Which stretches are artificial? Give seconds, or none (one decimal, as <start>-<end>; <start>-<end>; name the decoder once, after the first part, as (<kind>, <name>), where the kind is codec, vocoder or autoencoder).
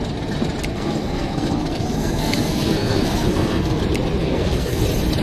0.7-3.8 (codec, SNAC); 4.2-4.8